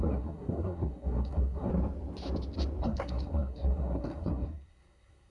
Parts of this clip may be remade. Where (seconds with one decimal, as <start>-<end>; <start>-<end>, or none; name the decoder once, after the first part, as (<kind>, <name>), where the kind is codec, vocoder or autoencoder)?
0.0-1.7 (codec, SNAC); 2.8-5.3